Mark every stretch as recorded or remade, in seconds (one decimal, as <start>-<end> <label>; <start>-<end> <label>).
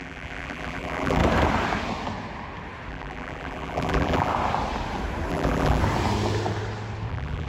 0.0-1.2 remade; 1.2-2.9 recorded; 2.9-4.3 remade; 4.3-5.3 recorded; 5.3-5.8 remade; 5.8-7.1 recorded; 7.1-7.5 remade